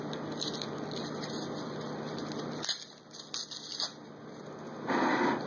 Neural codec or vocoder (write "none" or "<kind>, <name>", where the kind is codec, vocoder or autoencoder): none